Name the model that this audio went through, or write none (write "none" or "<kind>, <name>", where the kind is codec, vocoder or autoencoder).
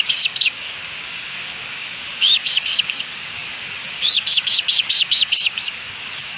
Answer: codec, DAC